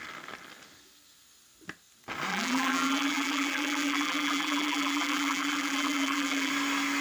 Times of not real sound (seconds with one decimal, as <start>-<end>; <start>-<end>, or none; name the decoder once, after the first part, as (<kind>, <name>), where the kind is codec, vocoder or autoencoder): 2.3-6.5 (vocoder, BigVGAN v2)